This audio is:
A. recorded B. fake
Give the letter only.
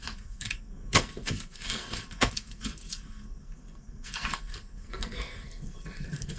B